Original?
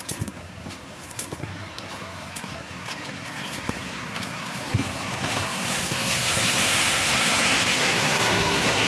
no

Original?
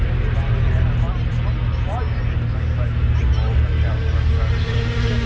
yes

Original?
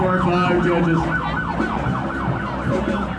yes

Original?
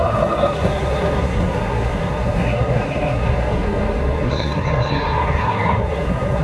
no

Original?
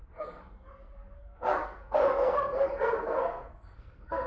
no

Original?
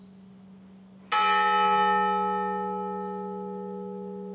yes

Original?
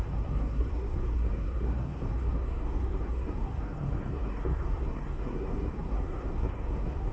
no